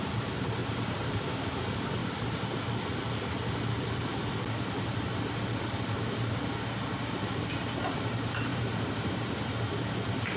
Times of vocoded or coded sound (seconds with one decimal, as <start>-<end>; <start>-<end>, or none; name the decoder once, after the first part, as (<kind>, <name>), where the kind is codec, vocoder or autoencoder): 0.6-1.4 (vocoder, BigVGAN v2); 8.5-9.1